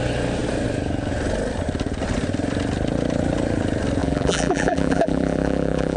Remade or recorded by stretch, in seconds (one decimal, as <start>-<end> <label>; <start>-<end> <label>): 0.0-4.0 recorded; 4.0-6.0 remade